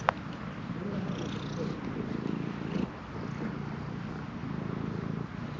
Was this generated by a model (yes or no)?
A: no